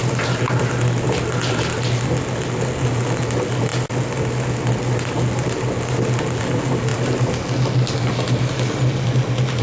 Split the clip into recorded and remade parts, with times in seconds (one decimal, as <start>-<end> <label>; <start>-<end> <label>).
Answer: 0.0-9.6 recorded